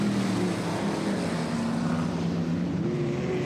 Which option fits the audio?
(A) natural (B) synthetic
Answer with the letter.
A